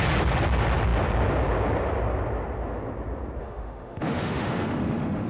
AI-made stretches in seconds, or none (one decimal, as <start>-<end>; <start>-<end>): 3.4-5.3